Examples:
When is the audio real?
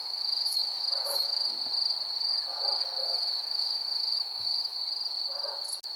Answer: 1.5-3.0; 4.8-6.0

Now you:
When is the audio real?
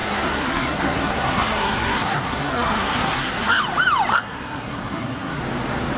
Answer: 3.6-4.1; 5.4-6.0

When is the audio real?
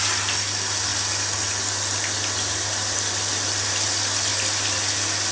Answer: 0.0-5.3